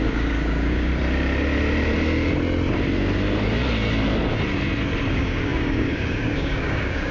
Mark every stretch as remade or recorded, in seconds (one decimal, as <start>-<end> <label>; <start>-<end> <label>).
0.0-0.9 remade; 0.9-5.1 recorded; 5.1-7.1 remade